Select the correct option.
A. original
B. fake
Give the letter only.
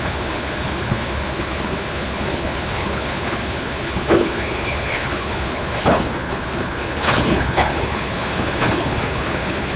B